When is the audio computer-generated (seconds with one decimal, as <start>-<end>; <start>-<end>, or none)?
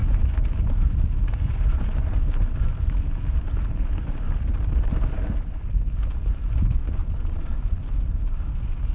7.0-7.6